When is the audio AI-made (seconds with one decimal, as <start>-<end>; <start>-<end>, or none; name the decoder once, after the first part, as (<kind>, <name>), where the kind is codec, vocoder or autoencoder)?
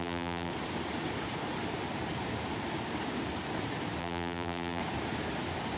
0.0-0.5 (vocoder, BigVGAN v2); 4.0-4.8